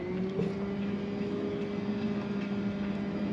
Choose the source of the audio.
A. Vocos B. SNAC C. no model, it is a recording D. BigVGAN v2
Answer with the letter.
C